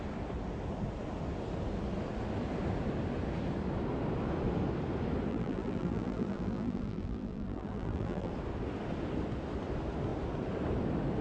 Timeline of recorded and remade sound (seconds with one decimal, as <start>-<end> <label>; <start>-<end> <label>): 0.0-5.3 recorded; 5.3-8.3 remade; 8.3-11.2 recorded